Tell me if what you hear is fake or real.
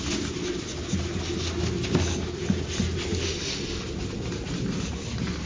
real